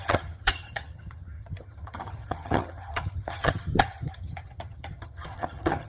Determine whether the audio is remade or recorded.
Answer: remade